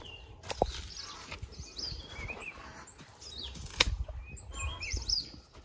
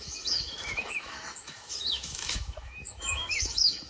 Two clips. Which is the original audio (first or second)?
first